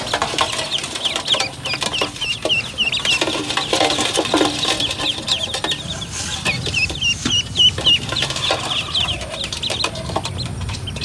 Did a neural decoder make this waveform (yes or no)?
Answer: no